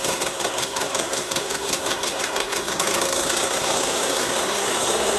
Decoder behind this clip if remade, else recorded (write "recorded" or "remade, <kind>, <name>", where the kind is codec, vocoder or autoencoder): remade, codec, SNAC